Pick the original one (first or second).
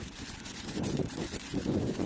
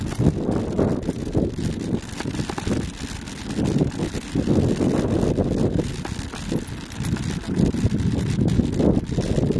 second